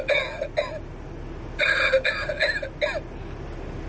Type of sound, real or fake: real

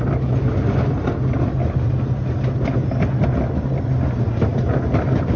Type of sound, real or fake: real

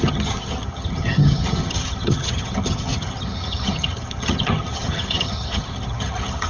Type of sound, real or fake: fake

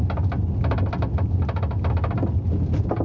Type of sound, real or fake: real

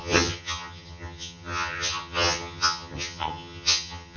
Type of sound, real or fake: fake